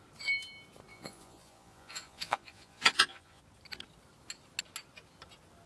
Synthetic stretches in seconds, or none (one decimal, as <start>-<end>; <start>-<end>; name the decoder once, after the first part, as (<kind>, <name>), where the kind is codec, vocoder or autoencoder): 0.9-3.4 (vocoder, Vocos)